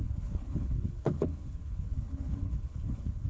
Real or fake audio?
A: fake